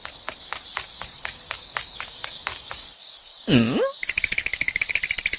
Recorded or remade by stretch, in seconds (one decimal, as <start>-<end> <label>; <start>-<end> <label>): 0.0-1.2 recorded; 1.2-3.5 remade; 3.5-3.9 recorded; 3.9-4.9 remade; 4.9-5.4 recorded